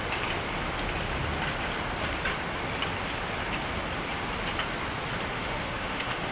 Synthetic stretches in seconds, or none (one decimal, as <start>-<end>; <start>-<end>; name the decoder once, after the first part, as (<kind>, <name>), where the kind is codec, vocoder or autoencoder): 5.3-6.3 (autoencoder, DAC-VAE)